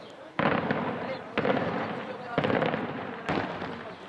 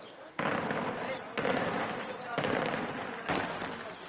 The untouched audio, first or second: second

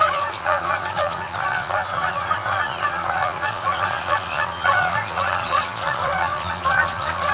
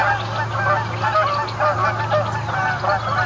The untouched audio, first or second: second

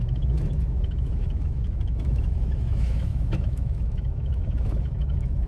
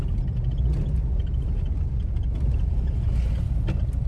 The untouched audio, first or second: second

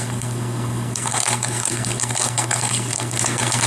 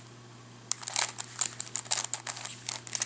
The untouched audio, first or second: second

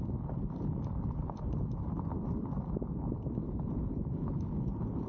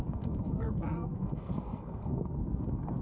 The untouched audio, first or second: first